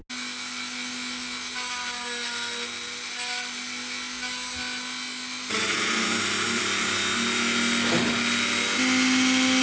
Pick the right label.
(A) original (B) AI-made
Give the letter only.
A